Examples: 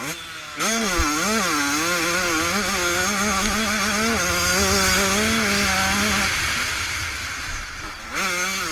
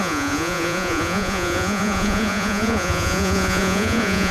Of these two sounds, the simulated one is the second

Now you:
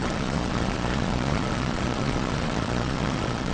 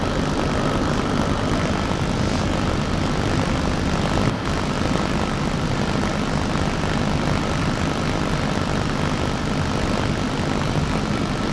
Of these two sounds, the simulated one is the first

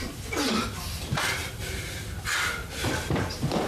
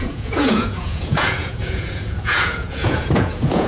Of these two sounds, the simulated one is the second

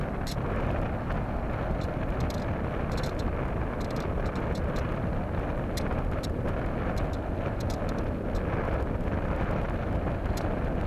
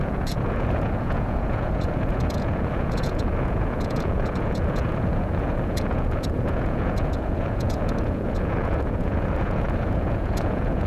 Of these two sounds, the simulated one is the second